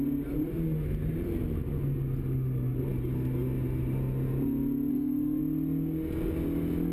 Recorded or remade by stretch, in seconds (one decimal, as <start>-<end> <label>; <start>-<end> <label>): 0.0-4.9 recorded; 4.9-5.4 remade; 5.4-6.9 recorded